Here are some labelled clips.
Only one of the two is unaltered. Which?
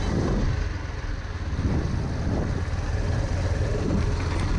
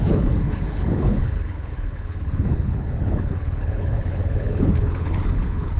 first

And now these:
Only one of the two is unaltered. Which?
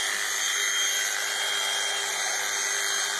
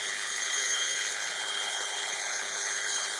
first